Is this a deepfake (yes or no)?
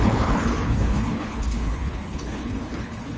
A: yes